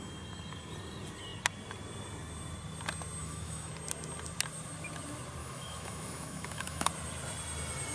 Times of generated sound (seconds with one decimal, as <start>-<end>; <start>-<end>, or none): 3.2-3.7; 5.4-6.9